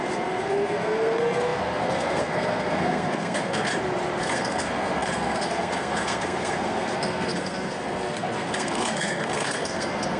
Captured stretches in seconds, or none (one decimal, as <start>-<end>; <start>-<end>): 3.7-4.2